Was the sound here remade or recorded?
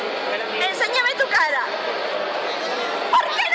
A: recorded